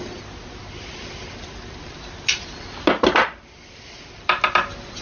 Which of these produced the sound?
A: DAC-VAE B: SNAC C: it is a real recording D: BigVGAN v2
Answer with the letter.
C